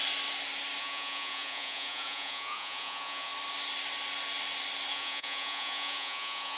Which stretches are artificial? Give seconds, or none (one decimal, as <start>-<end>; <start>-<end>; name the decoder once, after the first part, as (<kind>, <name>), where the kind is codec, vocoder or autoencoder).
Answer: 0.8-3.3 (vocoder, Vocos); 4.9-6.6

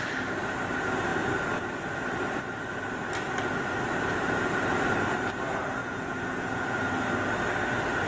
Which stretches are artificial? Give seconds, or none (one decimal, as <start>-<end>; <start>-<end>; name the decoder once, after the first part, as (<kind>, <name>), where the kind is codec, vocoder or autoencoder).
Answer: 5.8-6.9 (vocoder, Vocos)

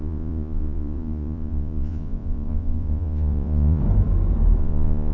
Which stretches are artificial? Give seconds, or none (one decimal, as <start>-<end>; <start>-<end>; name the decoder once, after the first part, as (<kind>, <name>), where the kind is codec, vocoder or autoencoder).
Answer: 0.0-3.8 (vocoder, Vocos); 4.6-5.1

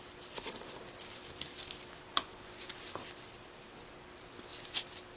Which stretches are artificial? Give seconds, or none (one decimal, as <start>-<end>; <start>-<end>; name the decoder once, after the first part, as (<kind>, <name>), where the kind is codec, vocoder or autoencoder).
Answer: 2.1-2.7 (vocoder, Vocos)